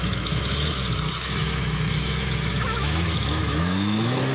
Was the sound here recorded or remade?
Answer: remade